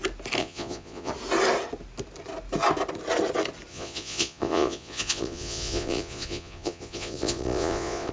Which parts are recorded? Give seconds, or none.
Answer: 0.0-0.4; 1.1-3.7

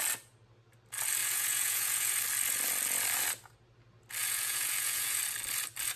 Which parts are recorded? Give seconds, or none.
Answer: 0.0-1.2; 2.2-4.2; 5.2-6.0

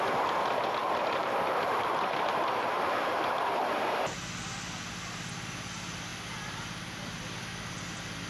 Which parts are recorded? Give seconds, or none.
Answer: 0.0-0.8; 4.1-8.3

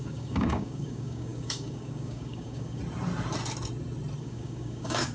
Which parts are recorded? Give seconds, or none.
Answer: 2.8-4.2